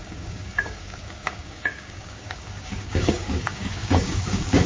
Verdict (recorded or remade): remade